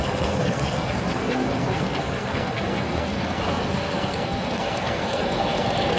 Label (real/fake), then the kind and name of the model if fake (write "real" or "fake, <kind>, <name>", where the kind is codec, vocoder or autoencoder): fake, codec, SNAC